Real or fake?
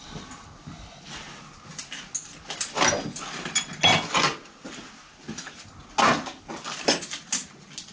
real